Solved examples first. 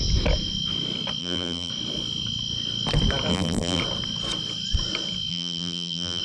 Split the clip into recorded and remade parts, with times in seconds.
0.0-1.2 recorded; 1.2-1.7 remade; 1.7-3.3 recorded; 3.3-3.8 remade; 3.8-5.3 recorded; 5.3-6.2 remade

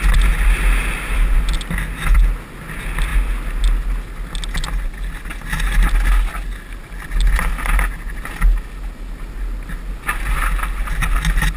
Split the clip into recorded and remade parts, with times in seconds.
0.0-11.6 recorded

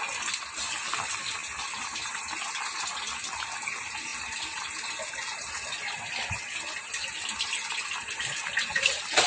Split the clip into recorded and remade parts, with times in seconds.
0.0-9.3 recorded

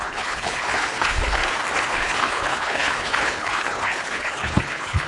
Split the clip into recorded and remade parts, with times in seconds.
0.0-1.4 remade; 1.4-1.9 recorded; 1.9-5.1 remade